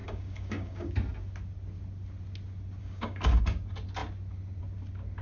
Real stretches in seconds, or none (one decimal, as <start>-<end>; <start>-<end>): 0.9-2.8; 3.4-5.2